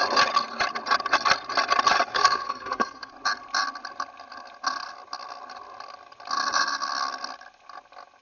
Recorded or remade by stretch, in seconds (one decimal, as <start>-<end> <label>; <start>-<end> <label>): 0.0-2.1 recorded; 2.1-3.1 remade; 3.1-8.2 recorded